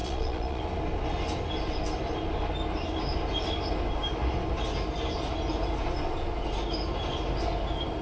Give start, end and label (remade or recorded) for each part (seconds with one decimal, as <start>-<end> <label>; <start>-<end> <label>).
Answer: 0.0-0.6 remade; 0.6-8.0 recorded